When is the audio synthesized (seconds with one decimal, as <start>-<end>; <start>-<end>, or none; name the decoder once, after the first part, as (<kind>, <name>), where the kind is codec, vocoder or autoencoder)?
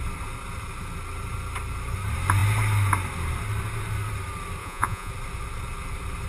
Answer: 4.6-5.1 (vocoder, Vocos)